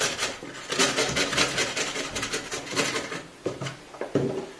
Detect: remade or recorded recorded